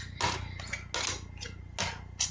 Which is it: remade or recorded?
recorded